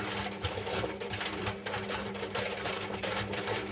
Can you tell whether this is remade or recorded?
recorded